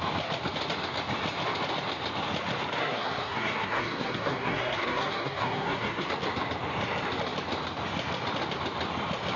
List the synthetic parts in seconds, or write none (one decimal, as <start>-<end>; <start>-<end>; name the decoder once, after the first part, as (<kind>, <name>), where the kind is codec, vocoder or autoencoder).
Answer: 2.8-6.1 (codec, SNAC)